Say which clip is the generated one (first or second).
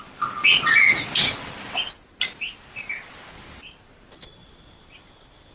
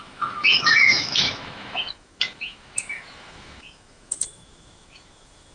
second